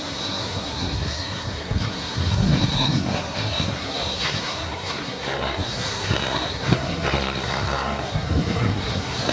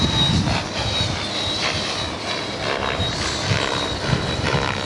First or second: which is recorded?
second